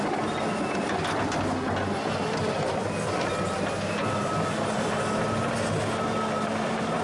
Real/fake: real